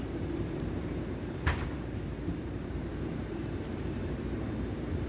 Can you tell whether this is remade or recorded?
remade